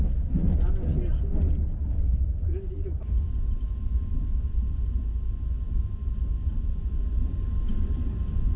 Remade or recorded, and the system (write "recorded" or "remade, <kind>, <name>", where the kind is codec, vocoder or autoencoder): recorded